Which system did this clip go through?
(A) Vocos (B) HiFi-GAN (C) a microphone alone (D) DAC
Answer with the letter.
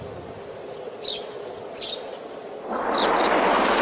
C